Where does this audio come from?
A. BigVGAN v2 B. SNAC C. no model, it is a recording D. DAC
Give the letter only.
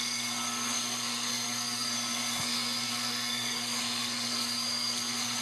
B